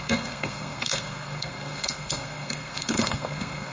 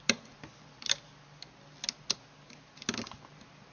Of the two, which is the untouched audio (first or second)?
second